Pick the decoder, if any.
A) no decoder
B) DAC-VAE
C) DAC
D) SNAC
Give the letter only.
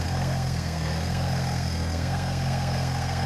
D